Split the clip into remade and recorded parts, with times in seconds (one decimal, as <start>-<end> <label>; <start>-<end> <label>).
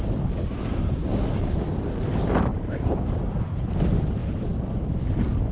0.0-0.6 recorded; 0.6-1.6 remade; 1.6-2.5 recorded; 2.5-3.2 remade; 3.2-5.5 recorded